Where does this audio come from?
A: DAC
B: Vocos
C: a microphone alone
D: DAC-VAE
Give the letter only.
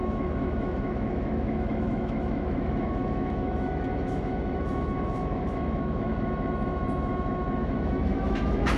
D